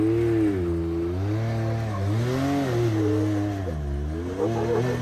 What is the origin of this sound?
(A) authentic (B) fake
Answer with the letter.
A